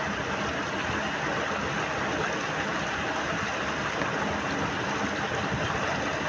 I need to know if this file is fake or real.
real